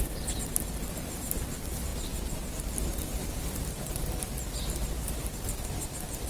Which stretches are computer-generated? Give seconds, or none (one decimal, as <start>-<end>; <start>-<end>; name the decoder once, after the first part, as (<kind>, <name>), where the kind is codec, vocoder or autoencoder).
none